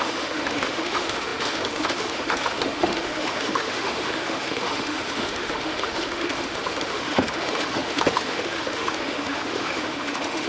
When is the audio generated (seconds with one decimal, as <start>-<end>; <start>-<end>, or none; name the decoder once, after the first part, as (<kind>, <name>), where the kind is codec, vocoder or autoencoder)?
0.0-10.5 (autoencoder, DAC-VAE)